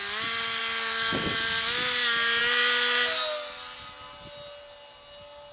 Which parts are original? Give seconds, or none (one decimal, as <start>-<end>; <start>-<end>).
0.6-5.5